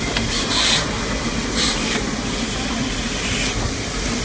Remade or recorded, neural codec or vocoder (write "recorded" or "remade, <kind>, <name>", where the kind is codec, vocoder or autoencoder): recorded